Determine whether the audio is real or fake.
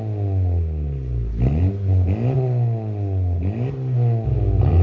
real